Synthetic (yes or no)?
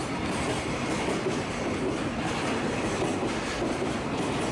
no